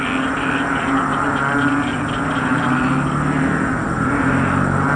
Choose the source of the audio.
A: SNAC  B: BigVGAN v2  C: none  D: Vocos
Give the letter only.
C